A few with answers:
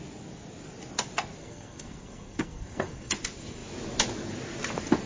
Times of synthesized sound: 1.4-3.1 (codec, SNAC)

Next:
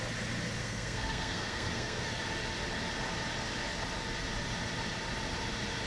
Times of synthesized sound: 0.6-2.2 (codec, SNAC)

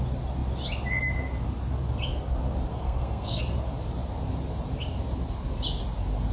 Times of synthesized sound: 2.7-3.4 (codec, SNAC)

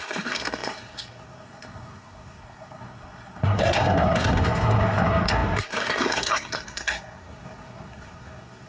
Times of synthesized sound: 0.0-8.7 (codec, SNAC)

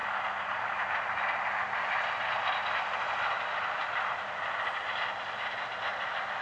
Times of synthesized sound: none

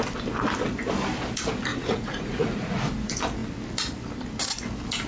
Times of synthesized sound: 1.7-2.8 (vocoder, Vocos)

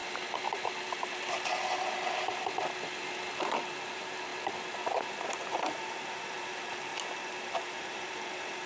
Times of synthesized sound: 3.4-4.3 (vocoder, BigVGAN v2); 4.9-6.9; 7.6-8.7